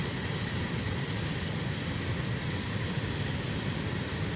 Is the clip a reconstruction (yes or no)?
yes